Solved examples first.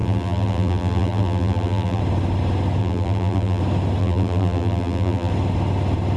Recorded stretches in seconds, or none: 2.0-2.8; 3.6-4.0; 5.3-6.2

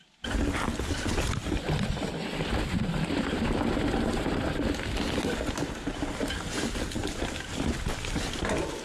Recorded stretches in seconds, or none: 0.0-1.4; 6.3-7.0

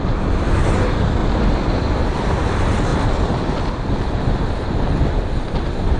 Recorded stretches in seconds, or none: 1.2-2.4; 2.9-5.5

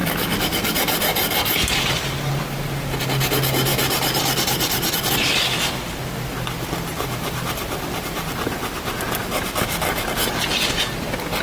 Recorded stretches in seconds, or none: 0.0-3.7; 5.1-6.9; 9.2-11.4

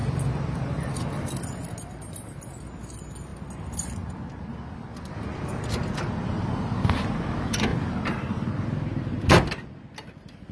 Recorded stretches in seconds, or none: 0.0-7.7; 8.5-10.5

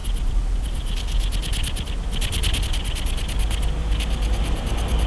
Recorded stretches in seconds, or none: 2.6-5.1

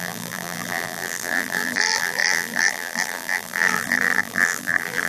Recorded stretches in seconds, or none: none